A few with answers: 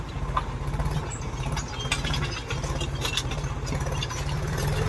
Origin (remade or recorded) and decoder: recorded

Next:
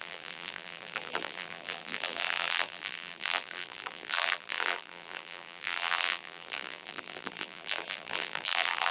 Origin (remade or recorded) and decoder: remade, vocoder, BigVGAN v2